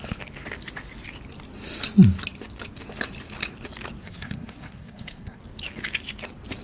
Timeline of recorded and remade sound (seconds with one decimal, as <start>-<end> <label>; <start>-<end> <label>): 0.0-4.0 recorded; 4.0-5.4 remade; 5.4-6.6 recorded

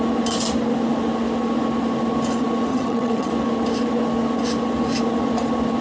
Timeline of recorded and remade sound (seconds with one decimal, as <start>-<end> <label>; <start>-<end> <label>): 0.0-2.7 recorded; 2.7-3.3 remade; 3.3-5.8 recorded

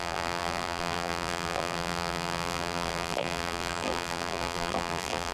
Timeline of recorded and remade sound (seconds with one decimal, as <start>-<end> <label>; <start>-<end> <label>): 0.0-5.3 remade

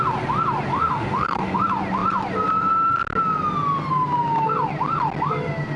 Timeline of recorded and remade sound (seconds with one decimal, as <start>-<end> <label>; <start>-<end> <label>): 0.0-0.7 recorded; 0.7-1.6 remade; 1.6-5.8 recorded

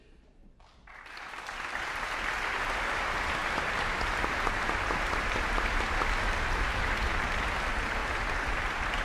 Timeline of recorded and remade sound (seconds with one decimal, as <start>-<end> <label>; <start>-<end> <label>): 0.0-0.4 recorded; 0.4-2.1 remade; 2.1-3.4 recorded; 3.4-6.5 remade; 6.5-9.0 recorded

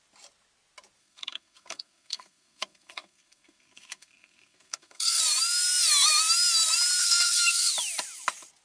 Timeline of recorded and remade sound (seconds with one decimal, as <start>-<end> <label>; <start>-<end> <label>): 0.0-1.0 recorded; 1.0-5.2 remade; 5.2-7.0 recorded; 7.0-7.7 remade; 7.7-8.6 recorded

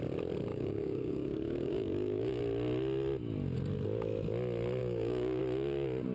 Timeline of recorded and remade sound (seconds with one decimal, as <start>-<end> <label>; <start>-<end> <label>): 0.0-0.5 recorded; 0.5-2.4 remade; 2.4-4.8 recorded; 4.8-5.4 remade; 5.4-6.1 recorded